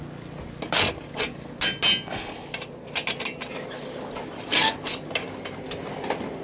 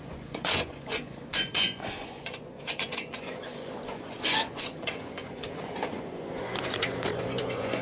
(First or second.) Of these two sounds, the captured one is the first